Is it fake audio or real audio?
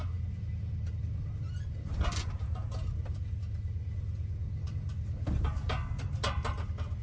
real